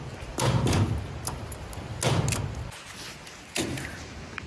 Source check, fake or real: real